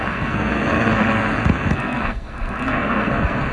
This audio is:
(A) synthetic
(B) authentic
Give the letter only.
A